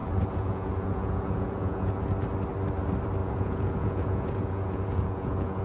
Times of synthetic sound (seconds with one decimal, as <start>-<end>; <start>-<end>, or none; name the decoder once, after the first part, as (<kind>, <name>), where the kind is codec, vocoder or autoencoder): 0.0-1.9 (vocoder, Vocos); 3.2-5.6